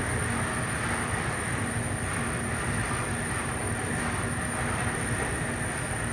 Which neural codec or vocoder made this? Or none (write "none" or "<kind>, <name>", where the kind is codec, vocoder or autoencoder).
none